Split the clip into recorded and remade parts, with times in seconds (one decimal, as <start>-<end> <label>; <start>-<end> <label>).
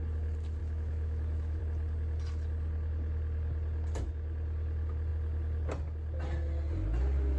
0.0-0.6 recorded; 0.6-1.6 remade; 1.6-7.4 recorded